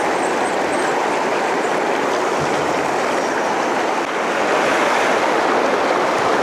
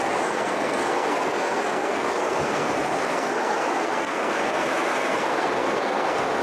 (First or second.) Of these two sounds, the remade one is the second